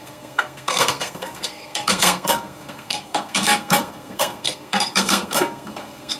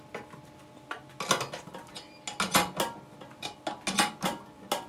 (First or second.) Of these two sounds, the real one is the second